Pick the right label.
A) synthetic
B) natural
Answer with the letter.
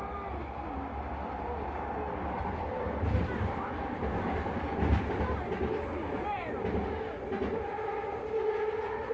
B